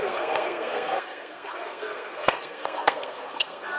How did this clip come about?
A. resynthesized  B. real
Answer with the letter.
A